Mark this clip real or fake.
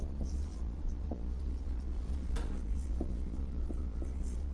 fake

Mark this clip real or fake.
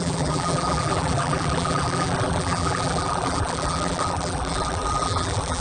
fake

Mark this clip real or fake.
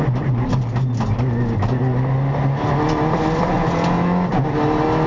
real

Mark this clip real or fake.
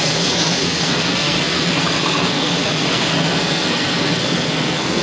fake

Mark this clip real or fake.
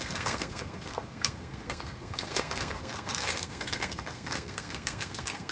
fake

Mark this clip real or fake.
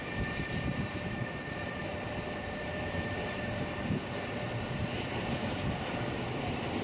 fake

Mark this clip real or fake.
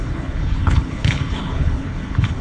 fake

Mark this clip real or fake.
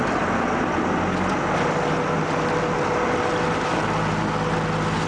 real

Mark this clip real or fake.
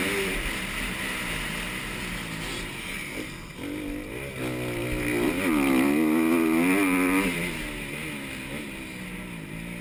real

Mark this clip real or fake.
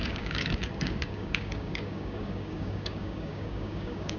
fake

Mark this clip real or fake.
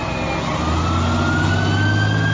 real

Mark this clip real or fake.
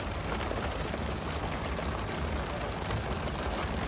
real